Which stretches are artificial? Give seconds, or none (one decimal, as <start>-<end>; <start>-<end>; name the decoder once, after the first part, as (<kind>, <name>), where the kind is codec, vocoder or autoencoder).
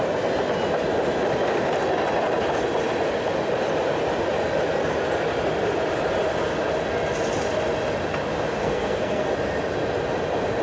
8.6-9.3 (codec, SNAC)